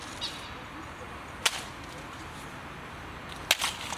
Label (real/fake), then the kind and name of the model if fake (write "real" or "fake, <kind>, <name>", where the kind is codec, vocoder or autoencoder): real